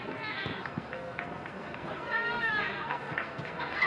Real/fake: fake